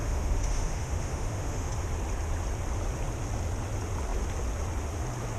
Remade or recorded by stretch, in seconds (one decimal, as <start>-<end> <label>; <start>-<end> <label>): 0.0-1.7 remade; 1.7-5.4 recorded